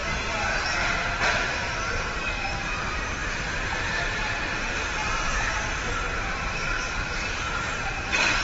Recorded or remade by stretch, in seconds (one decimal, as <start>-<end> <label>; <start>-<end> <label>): 0.0-1.5 recorded; 1.5-8.4 remade